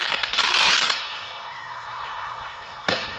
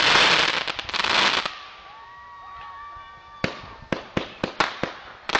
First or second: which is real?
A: second